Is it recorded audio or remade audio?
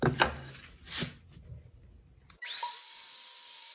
recorded